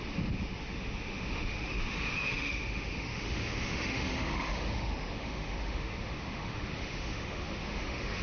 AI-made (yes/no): yes